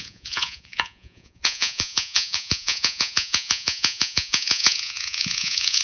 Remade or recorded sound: remade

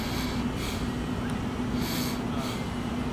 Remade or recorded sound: recorded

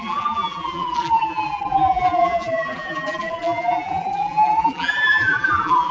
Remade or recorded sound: remade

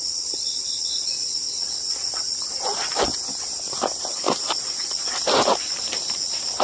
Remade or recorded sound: recorded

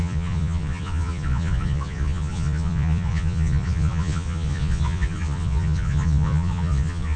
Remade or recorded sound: remade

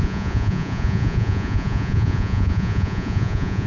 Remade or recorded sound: remade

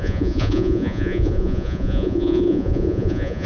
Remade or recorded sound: remade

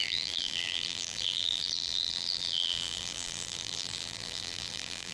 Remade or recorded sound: remade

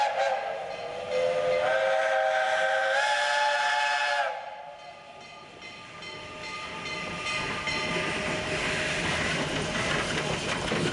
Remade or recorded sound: recorded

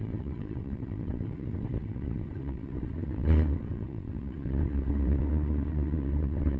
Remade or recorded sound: remade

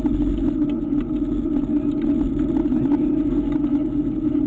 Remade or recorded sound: recorded